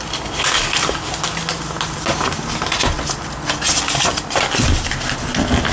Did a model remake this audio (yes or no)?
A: no